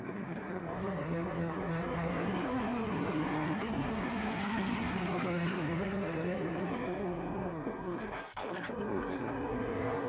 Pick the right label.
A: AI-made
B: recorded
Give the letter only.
A